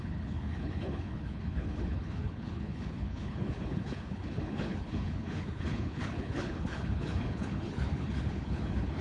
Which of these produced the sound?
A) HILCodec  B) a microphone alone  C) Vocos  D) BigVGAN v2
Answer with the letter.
A